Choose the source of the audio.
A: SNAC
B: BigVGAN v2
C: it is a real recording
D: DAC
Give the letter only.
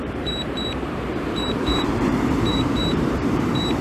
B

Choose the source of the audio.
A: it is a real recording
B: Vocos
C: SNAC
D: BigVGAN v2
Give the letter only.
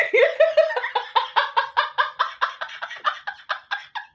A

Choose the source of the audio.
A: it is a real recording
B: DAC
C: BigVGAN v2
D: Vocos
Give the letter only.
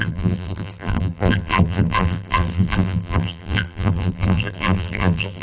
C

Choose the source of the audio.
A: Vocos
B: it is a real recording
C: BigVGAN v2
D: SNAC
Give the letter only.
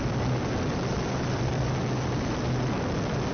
C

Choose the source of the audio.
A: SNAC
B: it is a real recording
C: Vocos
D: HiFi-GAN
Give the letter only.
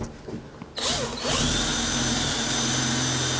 B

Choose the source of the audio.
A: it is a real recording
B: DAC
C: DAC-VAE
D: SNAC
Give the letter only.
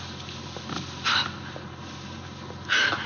A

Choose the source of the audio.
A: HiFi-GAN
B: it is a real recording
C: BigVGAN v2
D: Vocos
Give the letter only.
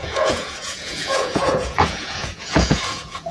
D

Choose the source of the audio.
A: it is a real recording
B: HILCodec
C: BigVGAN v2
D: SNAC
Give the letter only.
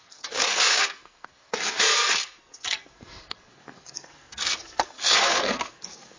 D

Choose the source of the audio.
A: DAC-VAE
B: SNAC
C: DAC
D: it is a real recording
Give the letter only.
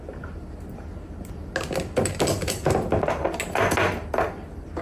D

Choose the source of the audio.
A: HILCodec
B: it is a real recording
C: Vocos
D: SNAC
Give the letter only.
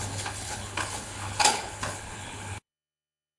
A